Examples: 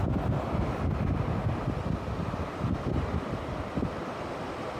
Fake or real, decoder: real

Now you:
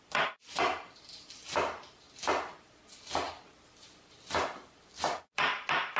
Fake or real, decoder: real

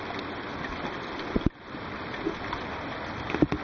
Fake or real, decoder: fake, vocoder, BigVGAN v2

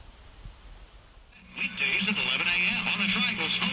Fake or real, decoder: real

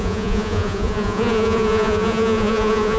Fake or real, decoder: fake, vocoder, Vocos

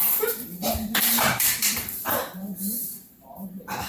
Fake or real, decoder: fake, vocoder, BigVGAN v2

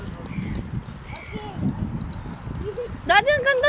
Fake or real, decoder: real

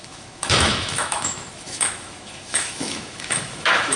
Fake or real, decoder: fake, autoencoder, DAC-VAE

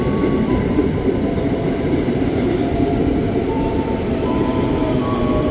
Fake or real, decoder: fake, vocoder, BigVGAN v2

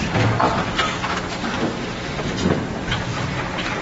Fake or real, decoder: real